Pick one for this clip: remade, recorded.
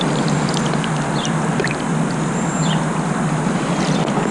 recorded